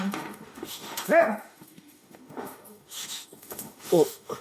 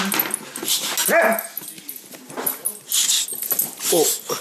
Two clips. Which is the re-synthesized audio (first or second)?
first